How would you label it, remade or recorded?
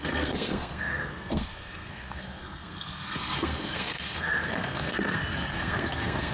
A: remade